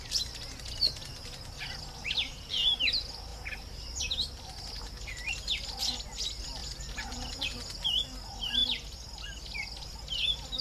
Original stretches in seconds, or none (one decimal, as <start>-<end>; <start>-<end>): 0.0-6.6; 8.0-8.6; 9.2-10.6